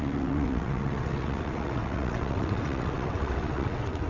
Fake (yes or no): yes